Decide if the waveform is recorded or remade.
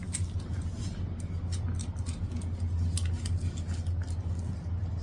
recorded